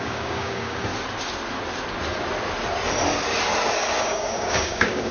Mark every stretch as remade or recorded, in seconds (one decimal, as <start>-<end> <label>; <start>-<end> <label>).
0.0-0.9 remade; 0.9-4.0 recorded; 4.0-5.1 remade